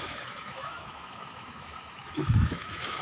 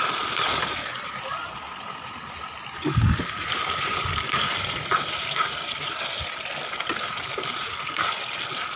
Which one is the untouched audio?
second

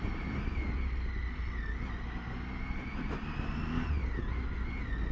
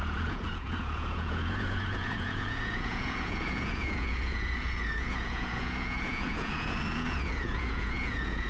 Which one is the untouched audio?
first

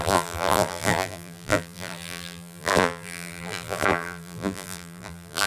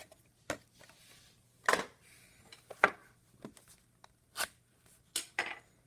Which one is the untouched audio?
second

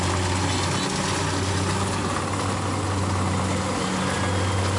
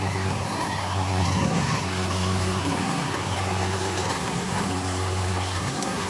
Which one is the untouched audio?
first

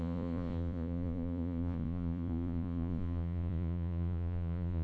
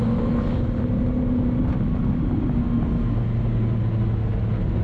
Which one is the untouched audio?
second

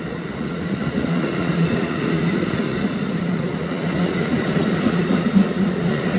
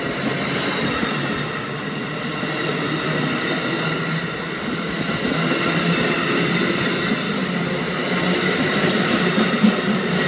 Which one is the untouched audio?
second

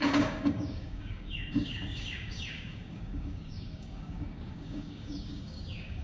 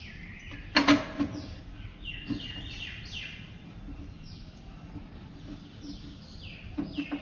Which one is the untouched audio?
second